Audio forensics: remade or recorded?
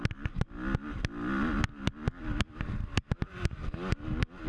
recorded